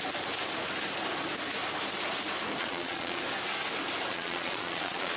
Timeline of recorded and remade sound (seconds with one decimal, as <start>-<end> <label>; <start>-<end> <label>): 0.0-2.6 recorded; 2.6-3.2 remade; 3.2-4.1 recorded; 4.1-5.2 remade